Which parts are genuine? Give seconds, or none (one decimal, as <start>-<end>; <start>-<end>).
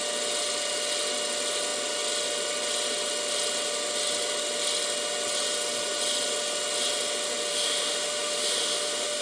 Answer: 0.0-7.5